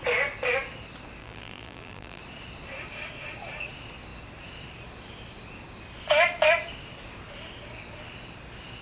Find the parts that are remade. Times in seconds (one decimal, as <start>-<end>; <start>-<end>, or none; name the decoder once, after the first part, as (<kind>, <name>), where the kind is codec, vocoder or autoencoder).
1.2-2.2 (vocoder, BigVGAN v2)